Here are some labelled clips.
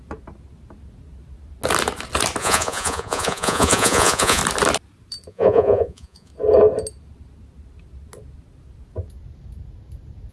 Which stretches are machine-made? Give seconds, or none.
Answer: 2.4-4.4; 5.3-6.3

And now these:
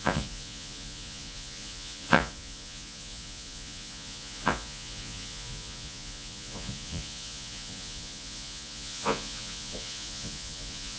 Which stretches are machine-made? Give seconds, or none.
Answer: 0.0-11.0

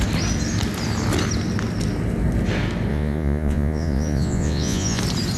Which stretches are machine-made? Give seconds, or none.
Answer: 2.9-5.0